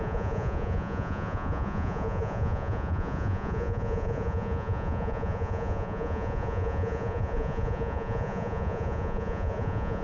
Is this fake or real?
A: fake